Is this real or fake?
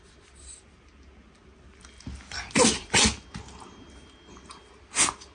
real